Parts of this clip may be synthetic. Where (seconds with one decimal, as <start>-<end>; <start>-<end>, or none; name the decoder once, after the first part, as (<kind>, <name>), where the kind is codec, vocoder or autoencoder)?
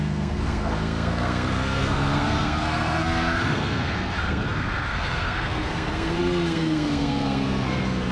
0.0-8.1 (codec, SNAC)